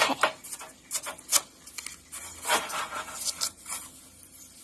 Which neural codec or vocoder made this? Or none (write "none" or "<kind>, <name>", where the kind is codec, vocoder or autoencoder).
none